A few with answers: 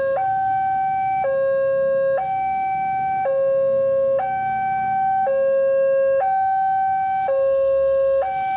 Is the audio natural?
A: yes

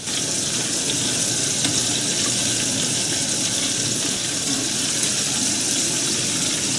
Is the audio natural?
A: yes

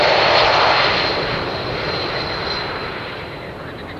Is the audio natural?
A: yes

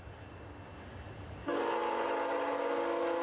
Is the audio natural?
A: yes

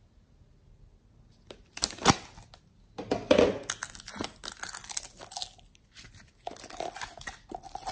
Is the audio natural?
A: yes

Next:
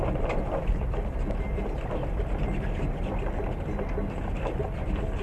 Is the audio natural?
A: yes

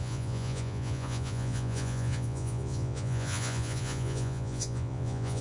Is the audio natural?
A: no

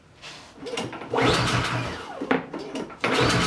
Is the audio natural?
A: yes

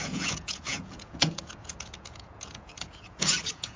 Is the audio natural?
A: no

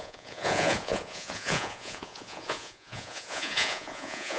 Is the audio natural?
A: no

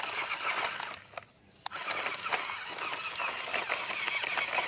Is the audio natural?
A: yes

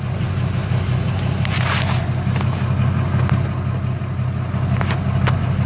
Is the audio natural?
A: yes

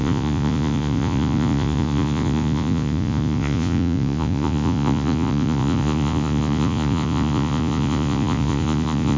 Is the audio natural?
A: no